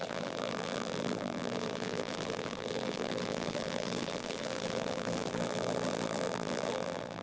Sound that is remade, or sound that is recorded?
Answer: remade